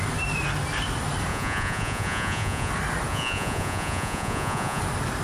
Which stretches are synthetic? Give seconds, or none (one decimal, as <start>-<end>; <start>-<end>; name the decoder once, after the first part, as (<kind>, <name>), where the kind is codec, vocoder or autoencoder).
1.3-2.7 (vocoder, Vocos); 3.1-4.8